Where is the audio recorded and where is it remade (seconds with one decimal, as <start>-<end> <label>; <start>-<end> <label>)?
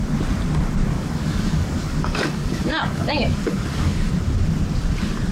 0.0-0.9 recorded; 0.9-4.1 remade; 4.1-5.3 recorded